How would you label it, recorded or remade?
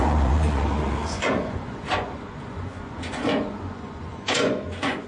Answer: remade